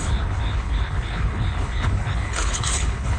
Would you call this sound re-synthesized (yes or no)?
yes